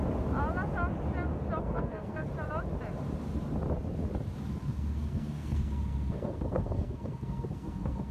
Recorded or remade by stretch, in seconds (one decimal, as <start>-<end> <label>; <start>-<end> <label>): 0.0-1.6 recorded; 1.6-2.3 remade; 2.3-4.6 recorded; 4.6-8.1 remade